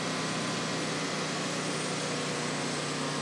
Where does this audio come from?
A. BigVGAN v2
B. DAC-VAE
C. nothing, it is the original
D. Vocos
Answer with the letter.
C